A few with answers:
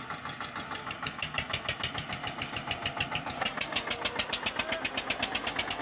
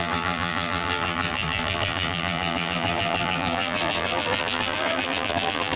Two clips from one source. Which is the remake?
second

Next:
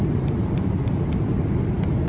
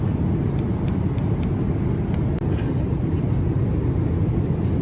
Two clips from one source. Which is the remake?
first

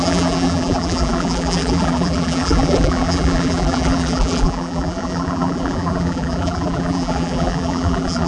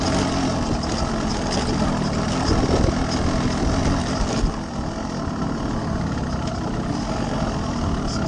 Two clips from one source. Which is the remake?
first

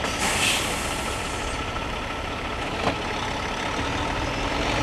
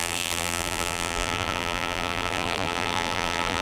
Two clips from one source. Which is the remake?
second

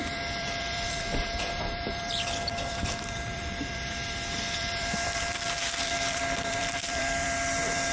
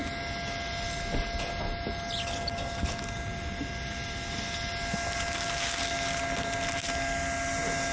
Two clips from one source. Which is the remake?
first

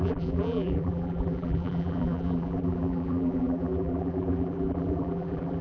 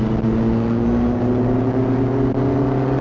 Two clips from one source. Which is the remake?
first